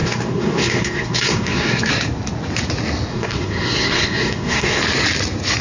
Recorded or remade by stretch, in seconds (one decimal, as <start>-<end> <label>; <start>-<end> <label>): 0.0-1.9 remade; 1.9-3.1 recorded; 3.1-4.8 remade; 4.8-5.6 recorded